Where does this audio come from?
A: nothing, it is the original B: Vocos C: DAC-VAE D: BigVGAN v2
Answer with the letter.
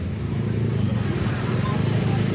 A